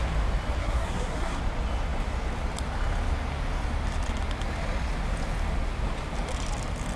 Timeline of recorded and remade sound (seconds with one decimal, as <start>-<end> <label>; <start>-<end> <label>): 0.0-0.6 recorded; 0.6-1.4 remade; 1.4-7.0 recorded